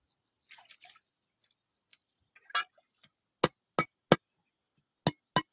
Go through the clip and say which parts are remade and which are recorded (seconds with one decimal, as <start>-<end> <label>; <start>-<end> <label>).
0.0-5.5 recorded